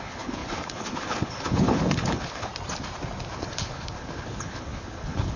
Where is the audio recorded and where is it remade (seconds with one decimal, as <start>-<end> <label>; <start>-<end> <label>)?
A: 0.0-2.5 remade; 2.5-3.3 recorded; 3.3-5.4 remade